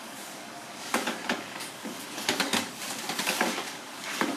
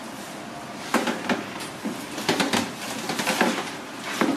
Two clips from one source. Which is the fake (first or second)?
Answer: first